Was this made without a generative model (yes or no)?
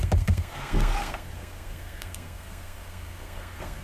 no